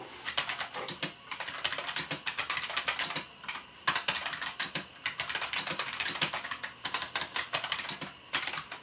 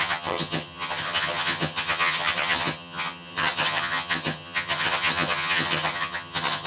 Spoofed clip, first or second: second